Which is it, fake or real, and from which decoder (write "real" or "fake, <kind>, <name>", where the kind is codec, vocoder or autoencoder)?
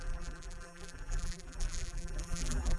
fake, vocoder, BigVGAN v2